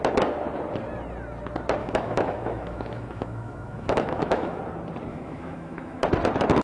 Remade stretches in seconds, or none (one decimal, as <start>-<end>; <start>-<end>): 1.8-4.6; 5.1-6.0